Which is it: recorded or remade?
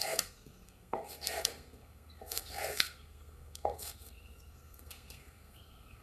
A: remade